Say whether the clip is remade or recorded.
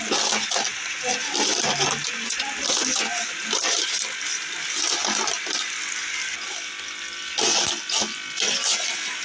recorded